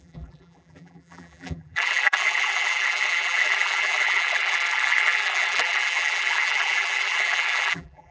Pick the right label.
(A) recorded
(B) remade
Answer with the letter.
B